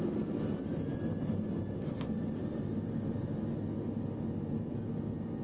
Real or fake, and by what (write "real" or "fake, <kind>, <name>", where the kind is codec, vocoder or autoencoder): real